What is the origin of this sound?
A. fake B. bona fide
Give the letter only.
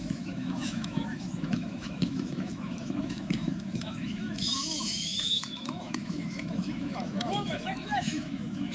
A